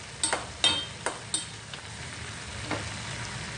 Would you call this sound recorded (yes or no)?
yes